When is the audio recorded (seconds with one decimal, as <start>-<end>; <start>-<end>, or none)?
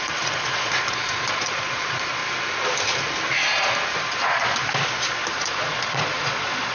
2.2-3.9; 4.6-5.3